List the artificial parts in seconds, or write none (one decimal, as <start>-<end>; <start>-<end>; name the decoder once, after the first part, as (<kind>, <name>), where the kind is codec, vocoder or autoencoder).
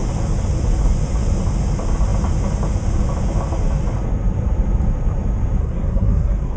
5.6-6.6 (codec, SNAC)